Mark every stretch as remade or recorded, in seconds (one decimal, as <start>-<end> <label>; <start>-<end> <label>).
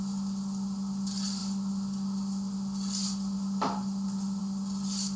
0.0-5.2 recorded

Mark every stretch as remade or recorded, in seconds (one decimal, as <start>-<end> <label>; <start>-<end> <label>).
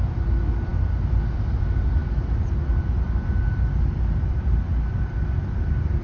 0.0-6.0 recorded